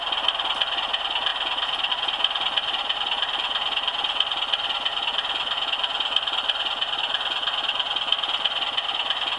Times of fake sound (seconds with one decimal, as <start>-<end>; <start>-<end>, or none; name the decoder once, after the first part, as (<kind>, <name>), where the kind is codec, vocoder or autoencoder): none